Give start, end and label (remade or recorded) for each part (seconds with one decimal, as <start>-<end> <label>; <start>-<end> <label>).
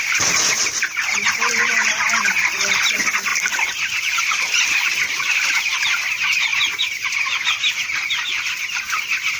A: 0.0-9.4 remade